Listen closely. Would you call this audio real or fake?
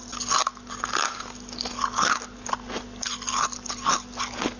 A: real